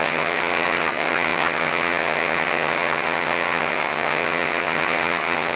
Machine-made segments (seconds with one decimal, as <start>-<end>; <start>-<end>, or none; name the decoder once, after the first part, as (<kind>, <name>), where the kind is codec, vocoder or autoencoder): 0.0-5.6 (vocoder, HiFi-GAN)